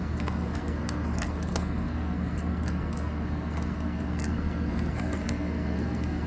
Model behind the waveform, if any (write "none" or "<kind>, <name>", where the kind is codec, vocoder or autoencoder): codec, SNAC